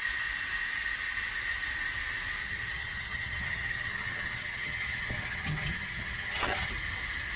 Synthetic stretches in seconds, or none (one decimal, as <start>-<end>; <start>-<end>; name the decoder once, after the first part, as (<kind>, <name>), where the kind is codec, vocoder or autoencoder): 2.4-6.7 (vocoder, HiFi-GAN)